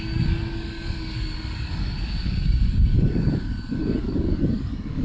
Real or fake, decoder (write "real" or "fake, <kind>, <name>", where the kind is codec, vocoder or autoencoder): fake, codec, DAC